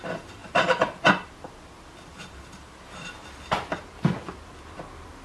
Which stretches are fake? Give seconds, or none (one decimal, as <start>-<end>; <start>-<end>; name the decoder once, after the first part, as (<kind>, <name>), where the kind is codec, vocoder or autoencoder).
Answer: 0.4-1.0 (vocoder, BigVGAN v2); 2.1-3.1